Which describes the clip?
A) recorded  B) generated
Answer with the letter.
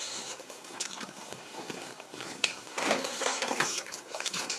B